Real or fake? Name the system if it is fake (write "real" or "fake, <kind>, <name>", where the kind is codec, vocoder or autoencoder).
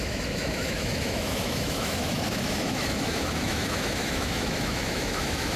fake, autoencoder, DAC-VAE